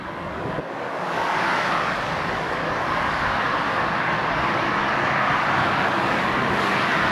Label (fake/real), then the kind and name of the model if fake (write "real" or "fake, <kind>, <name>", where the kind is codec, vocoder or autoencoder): fake, codec, DAC